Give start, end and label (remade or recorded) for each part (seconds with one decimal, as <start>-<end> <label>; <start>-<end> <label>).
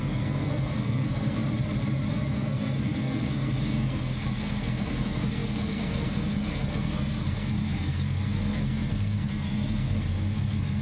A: 0.0-1.4 remade; 1.4-2.1 recorded; 2.1-10.8 remade